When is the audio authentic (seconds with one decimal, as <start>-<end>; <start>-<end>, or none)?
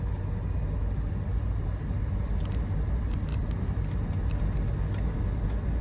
0.0-5.8